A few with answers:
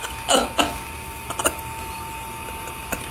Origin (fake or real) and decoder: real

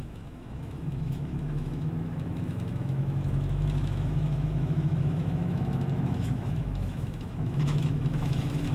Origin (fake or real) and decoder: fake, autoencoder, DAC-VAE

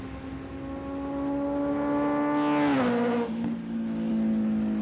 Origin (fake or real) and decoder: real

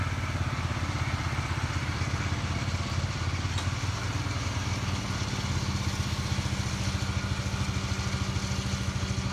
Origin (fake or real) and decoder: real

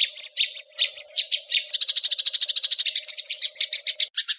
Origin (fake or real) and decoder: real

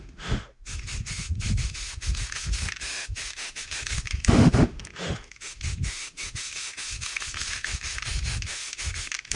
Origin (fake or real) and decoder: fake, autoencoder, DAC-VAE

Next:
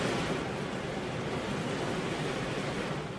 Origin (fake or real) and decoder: real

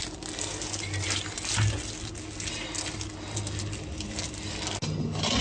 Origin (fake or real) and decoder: real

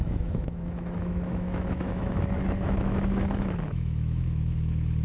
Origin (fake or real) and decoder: fake, autoencoder, DAC-VAE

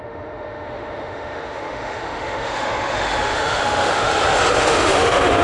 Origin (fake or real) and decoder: fake, autoencoder, DAC-VAE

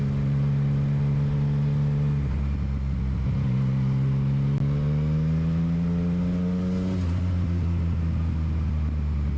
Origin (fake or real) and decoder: real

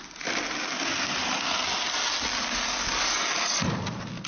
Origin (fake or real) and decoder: real